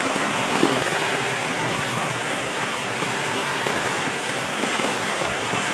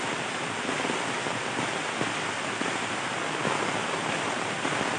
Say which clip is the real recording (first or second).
second